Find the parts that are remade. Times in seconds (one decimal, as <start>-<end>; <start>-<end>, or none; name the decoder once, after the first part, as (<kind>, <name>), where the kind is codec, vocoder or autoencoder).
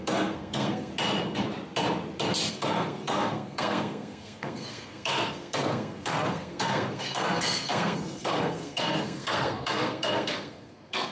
0.0-0.9 (codec, SNAC); 2.5-11.1